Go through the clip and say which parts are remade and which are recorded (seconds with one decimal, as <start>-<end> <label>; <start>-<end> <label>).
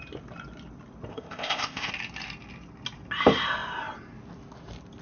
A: 0.0-1.1 recorded; 1.1-1.9 remade; 1.9-5.0 recorded